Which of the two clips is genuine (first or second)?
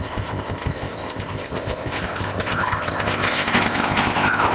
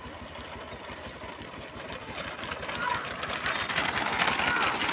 second